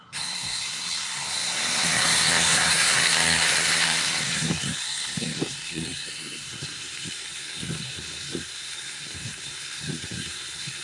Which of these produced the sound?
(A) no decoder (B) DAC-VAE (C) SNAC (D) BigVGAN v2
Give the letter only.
C